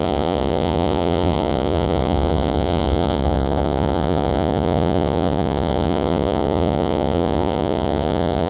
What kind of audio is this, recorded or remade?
remade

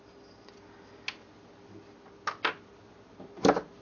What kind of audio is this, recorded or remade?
recorded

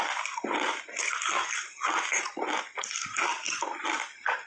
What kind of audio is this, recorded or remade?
recorded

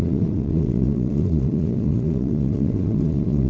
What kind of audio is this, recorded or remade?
remade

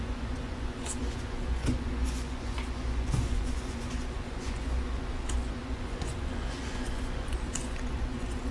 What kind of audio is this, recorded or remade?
remade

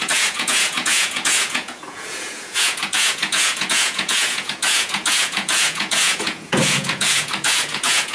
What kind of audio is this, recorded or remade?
remade